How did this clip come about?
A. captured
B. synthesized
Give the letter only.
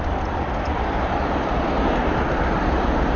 A